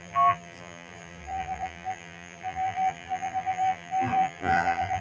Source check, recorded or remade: remade